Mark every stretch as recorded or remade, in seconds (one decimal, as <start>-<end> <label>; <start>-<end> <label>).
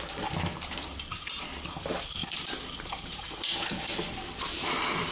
0.0-2.2 recorded; 2.2-3.8 remade; 3.8-5.1 recorded